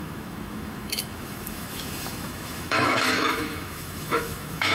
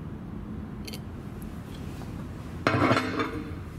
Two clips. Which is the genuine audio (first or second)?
second